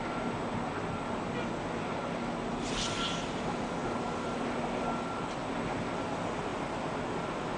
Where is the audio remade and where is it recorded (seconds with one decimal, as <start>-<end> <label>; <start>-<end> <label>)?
0.0-7.6 recorded